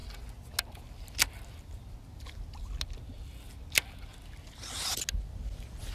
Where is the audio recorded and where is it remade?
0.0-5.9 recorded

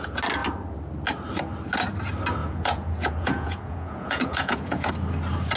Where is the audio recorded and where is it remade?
0.0-2.4 recorded; 2.4-4.9 remade; 4.9-5.6 recorded

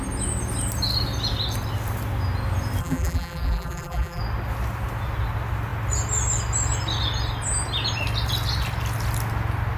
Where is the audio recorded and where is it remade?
0.0-2.8 recorded; 2.8-4.2 remade; 4.2-9.8 recorded

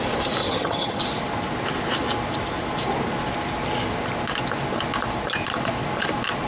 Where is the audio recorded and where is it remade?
0.0-0.4 recorded; 0.4-1.0 remade; 1.0-6.5 recorded

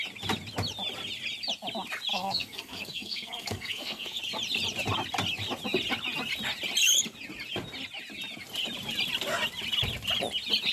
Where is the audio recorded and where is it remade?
0.0-2.1 recorded; 2.1-4.2 remade; 4.2-10.7 recorded

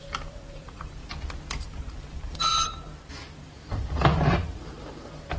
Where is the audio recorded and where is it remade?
0.0-1.0 remade; 1.0-1.5 recorded; 1.5-2.5 remade; 2.5-3.1 recorded; 3.1-5.4 remade

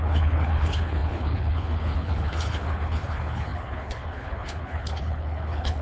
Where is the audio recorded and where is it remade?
0.0-5.8 remade

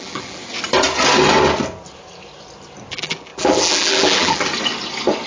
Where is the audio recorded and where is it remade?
0.0-0.4 remade; 0.4-2.9 recorded; 2.9-4.5 remade; 4.5-5.3 recorded